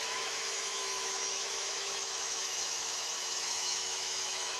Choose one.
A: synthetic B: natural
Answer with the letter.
A